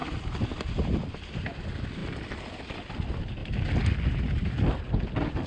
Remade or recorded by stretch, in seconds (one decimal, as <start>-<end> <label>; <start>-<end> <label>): 0.0-5.5 recorded